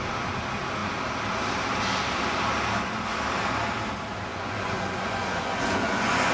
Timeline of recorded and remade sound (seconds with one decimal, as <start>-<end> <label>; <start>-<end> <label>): 0.0-4.3 recorded; 4.3-6.3 remade